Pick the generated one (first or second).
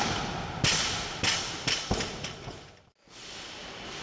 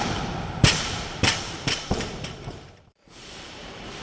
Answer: second